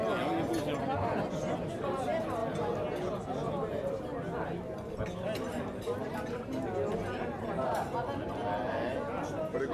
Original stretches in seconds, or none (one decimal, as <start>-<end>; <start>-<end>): 0.0-9.7